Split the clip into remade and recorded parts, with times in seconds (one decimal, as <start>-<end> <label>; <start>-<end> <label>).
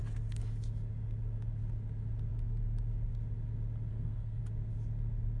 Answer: 0.0-3.9 recorded; 3.9-4.4 remade; 4.4-5.4 recorded